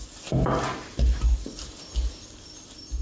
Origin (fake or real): real